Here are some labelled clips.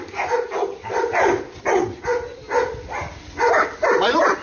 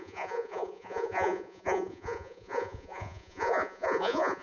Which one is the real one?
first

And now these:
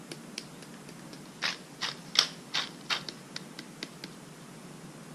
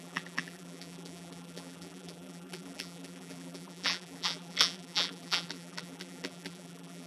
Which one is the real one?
first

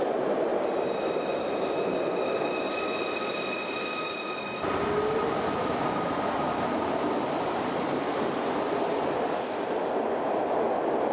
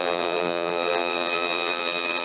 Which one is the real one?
first